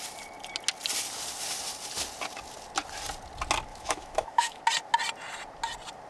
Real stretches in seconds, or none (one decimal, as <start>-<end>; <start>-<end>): 0.0-3.7; 4.6-6.1